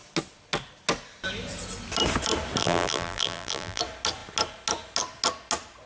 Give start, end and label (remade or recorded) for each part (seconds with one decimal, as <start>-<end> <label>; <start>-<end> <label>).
0.0-2.6 recorded; 2.6-3.8 remade; 3.8-5.9 recorded